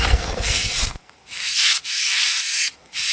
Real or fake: fake